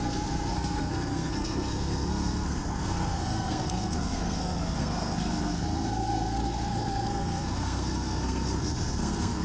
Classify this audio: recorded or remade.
remade